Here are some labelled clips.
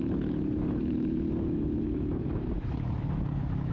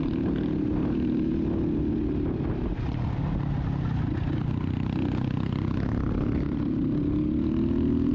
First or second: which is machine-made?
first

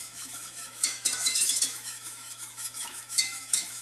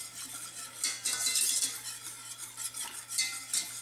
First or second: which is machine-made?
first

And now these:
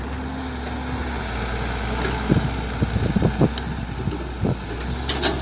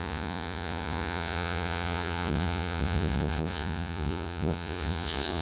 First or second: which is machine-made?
second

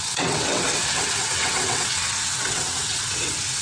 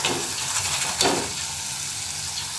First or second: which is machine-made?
first